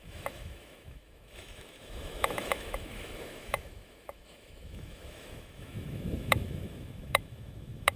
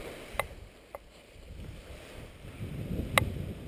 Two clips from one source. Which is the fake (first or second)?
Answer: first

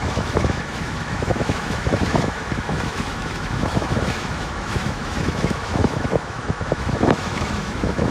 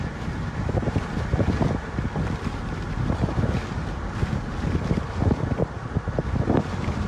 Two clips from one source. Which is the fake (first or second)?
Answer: first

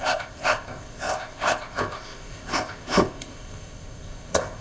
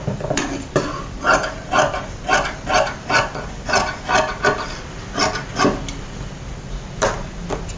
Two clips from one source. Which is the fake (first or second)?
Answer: first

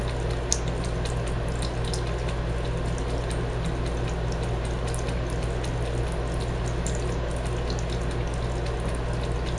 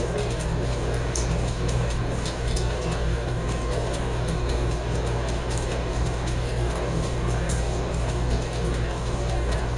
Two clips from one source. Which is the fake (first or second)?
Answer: second